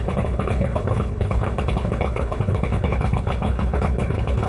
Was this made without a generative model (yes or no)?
no